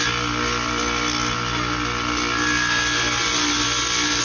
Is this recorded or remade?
recorded